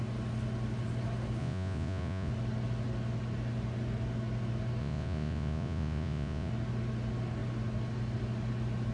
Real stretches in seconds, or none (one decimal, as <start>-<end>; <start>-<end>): 0.0-1.4; 2.3-4.8; 6.5-8.9